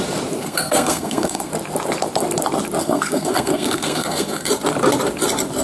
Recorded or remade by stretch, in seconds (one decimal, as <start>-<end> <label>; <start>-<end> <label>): 0.0-0.4 recorded; 0.4-1.5 remade; 1.5-2.8 recorded; 2.8-4.5 remade; 4.5-5.6 recorded